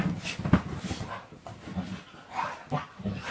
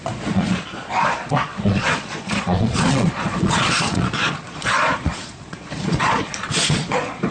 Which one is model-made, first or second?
second